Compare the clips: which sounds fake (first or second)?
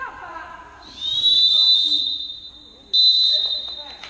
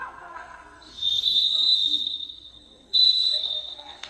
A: second